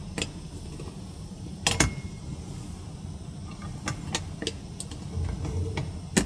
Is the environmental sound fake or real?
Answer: real